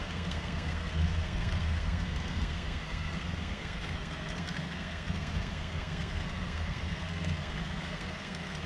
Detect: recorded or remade remade